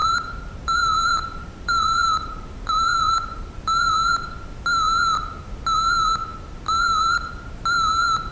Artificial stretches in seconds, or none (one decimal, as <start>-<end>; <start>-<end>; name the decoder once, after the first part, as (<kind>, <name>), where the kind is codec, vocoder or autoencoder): 0.0-3.9 (vocoder, BigVGAN v2)